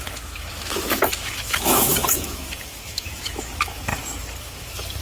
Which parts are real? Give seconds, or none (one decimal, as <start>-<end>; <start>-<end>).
3.9-4.4